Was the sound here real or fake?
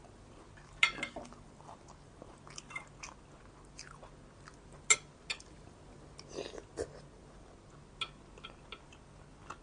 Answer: real